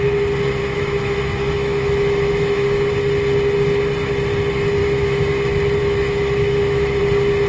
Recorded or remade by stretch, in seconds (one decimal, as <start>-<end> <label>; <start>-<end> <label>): 0.0-0.6 recorded; 0.6-2.9 remade; 2.9-4.8 recorded; 4.8-5.3 remade; 5.3-5.8 recorded; 5.8-7.0 remade; 7.0-7.5 recorded